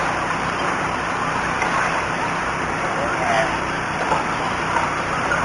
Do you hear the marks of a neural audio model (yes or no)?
yes